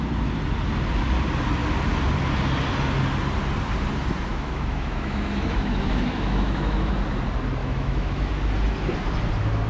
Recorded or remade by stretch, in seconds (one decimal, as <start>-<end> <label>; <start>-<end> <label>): 0.0-4.3 recorded; 4.3-6.9 remade; 6.9-7.6 recorded; 7.6-8.3 remade; 8.3-9.7 recorded

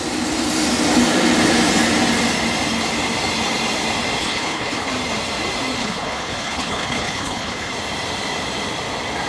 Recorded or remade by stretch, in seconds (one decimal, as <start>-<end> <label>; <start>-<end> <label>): 0.0-4.2 recorded; 4.2-4.9 remade; 4.9-5.8 recorded; 5.8-7.7 remade; 7.7-9.3 recorded

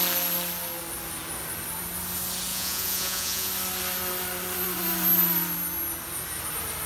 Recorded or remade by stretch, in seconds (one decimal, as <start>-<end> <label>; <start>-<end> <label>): 0.0-2.5 recorded; 2.5-3.5 remade; 3.5-6.9 recorded